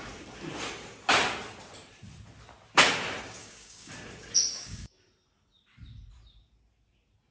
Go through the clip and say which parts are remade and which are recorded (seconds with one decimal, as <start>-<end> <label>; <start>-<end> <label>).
0.0-3.4 recorded; 3.4-3.9 remade; 3.9-4.5 recorded; 4.5-5.0 remade; 5.0-7.3 recorded